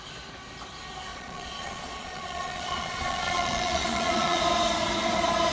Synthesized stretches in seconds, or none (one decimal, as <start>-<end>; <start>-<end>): 1.1-4.4